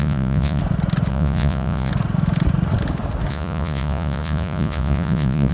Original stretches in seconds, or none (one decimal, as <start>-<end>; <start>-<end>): 0.6-1.1; 1.9-3.3